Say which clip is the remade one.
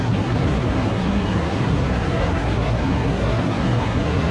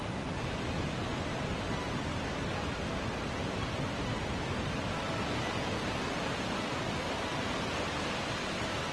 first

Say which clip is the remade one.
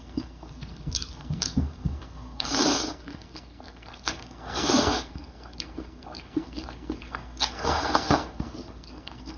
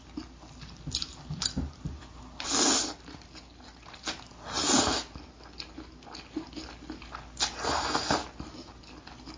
first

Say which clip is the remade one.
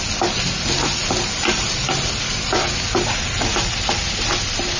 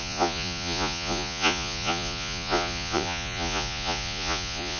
second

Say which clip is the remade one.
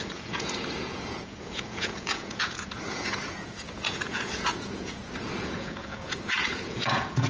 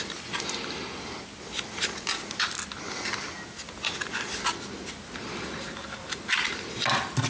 first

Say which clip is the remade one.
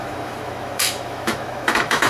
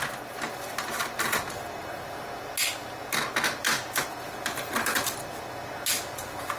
first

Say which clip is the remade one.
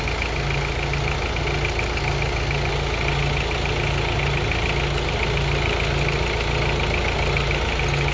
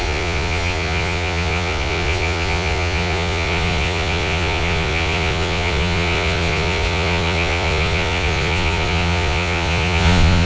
second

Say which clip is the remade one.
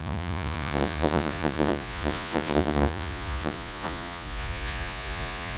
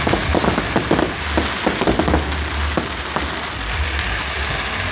first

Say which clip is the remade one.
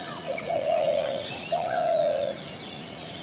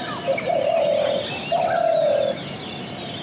first